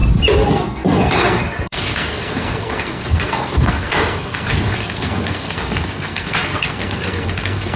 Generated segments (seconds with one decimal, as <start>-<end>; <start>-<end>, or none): 0.5-7.8